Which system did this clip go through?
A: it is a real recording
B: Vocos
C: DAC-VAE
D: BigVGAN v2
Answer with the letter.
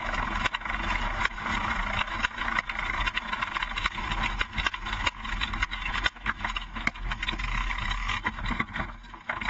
C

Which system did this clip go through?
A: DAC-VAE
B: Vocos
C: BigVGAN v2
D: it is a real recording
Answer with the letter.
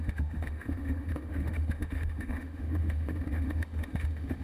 A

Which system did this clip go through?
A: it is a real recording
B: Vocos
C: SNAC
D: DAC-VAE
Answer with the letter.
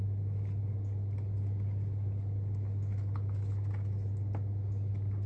A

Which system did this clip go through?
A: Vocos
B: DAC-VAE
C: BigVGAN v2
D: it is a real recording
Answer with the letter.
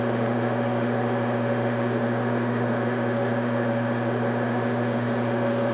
B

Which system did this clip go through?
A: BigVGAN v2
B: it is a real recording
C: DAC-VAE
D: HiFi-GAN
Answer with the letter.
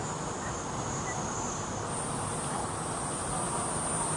B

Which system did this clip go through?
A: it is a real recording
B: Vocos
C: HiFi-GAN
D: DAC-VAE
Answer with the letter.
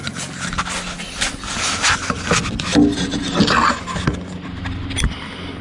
A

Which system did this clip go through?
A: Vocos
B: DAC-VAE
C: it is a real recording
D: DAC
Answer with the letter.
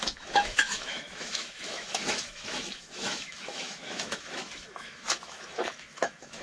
B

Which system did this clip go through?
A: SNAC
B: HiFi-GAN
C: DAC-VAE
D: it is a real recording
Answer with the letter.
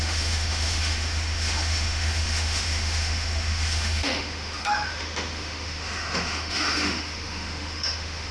C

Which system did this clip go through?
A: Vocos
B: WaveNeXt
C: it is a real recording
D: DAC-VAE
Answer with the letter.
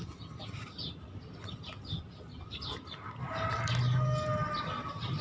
C